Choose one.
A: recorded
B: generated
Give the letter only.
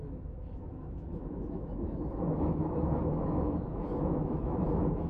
B